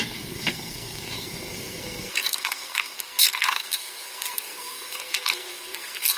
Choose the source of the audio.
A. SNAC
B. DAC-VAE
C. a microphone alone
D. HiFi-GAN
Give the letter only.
A